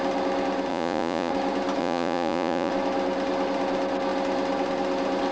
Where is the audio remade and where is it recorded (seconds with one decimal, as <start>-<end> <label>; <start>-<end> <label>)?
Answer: 0.0-0.7 recorded; 0.7-1.3 remade; 1.3-1.8 recorded; 1.8-2.7 remade; 2.7-5.3 recorded